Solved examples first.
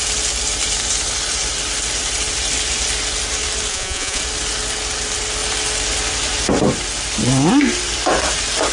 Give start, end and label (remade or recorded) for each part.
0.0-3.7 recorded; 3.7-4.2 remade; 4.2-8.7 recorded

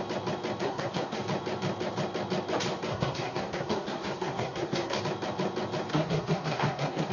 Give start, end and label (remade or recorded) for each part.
0.0-0.6 recorded; 0.6-1.2 remade; 1.2-2.9 recorded; 2.9-5.0 remade; 5.0-5.9 recorded; 5.9-7.1 remade